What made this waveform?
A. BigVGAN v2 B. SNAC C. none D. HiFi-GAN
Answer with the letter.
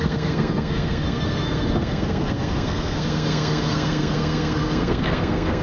B